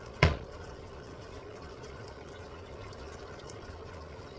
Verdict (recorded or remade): remade